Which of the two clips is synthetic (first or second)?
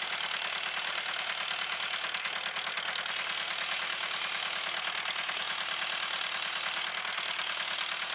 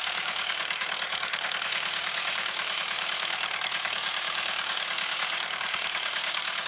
second